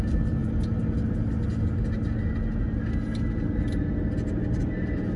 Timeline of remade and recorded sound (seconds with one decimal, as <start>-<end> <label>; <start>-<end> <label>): 0.0-5.2 recorded